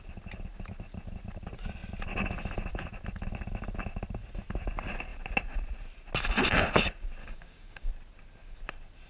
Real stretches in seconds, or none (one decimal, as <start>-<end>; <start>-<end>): 0.0-7.2; 7.9-9.1